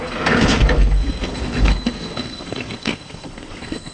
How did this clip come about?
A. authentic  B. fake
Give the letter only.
B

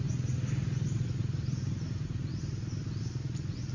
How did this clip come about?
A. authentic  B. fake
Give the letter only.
A